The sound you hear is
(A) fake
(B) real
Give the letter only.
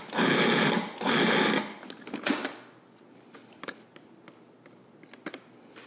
B